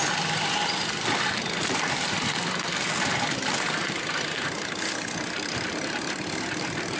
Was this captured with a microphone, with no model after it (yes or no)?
yes